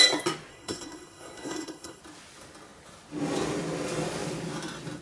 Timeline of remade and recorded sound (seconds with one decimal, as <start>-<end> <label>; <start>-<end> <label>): 0.0-0.5 recorded; 0.5-2.0 remade; 2.0-5.0 recorded